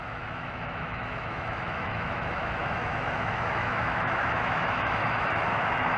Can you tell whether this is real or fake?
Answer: fake